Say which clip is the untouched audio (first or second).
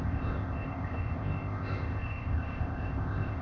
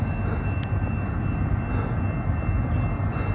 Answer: second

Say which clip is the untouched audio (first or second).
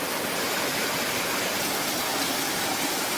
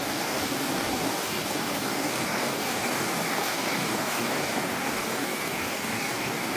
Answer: first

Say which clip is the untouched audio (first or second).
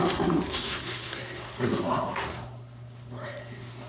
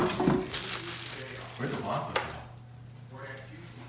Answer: second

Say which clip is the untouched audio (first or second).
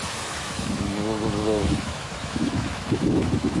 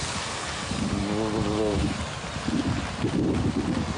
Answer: second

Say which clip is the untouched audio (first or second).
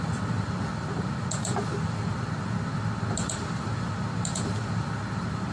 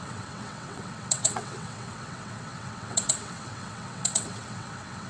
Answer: first